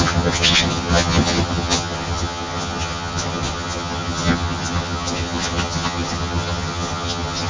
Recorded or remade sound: remade